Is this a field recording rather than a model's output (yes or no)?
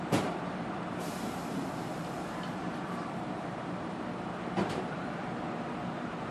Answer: no